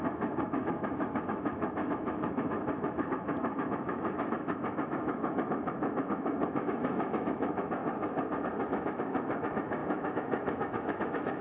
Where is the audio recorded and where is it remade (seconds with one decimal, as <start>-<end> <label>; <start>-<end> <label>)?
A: 0.0-7.8 remade; 7.8-8.7 recorded; 8.7-11.4 remade